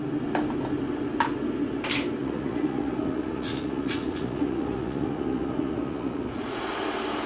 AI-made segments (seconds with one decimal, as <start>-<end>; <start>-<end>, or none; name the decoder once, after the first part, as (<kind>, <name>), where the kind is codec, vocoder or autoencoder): 2.2-6.6 (vocoder, Vocos)

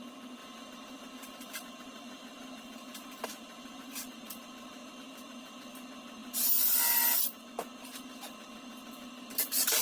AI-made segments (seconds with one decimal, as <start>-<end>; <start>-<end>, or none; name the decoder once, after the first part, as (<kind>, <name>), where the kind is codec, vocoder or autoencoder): 0.4-4.9 (vocoder, BigVGAN v2)

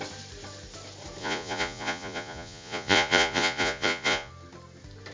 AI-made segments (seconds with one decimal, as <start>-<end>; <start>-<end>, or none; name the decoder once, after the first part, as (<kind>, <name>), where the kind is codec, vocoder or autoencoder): 1.2-4.3 (vocoder, Vocos)

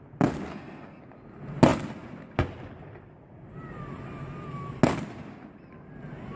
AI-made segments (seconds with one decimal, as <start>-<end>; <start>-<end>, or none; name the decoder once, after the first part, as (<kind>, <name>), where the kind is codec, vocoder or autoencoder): 0.5-1.0 (codec, SNAC)